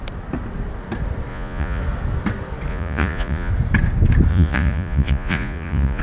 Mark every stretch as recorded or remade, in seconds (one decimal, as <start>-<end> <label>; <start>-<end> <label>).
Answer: 0.0-1.3 recorded; 1.3-1.8 remade; 1.8-2.7 recorded; 2.7-3.5 remade; 3.5-4.3 recorded; 4.3-6.0 remade